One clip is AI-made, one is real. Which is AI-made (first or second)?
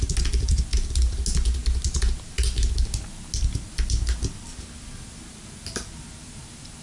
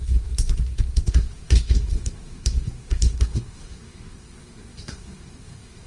second